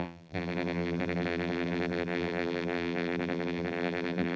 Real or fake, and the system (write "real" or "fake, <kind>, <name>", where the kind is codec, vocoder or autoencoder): fake, vocoder, BigVGAN v2